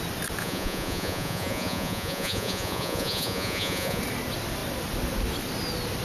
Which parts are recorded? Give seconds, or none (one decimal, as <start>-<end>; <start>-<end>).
0.0-0.4; 4.0-6.0